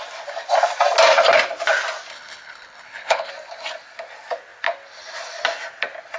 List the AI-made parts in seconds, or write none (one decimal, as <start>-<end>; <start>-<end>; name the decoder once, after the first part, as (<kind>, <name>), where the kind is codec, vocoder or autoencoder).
2.1-3.3 (codec, HILCodec)